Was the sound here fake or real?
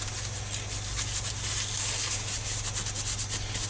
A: real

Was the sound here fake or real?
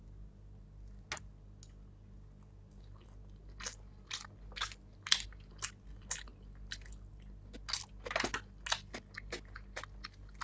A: real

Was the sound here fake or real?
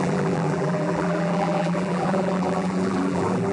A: fake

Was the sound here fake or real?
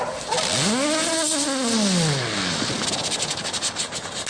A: real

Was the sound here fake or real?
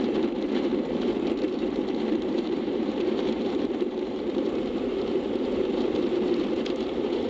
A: fake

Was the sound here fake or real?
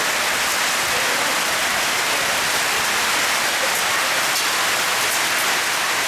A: real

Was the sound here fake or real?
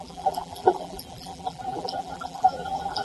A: fake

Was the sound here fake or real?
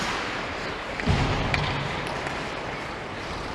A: fake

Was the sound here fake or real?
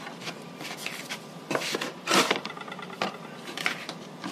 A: fake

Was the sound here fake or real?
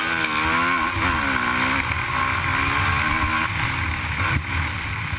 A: real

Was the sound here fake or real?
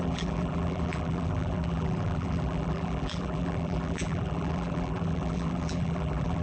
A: fake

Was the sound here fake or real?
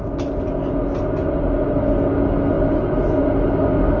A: real